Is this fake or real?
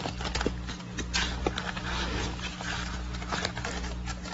real